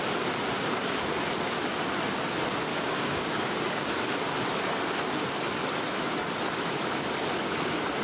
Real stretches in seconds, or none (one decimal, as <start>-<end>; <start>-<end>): 0.0-2.7; 3.9-8.0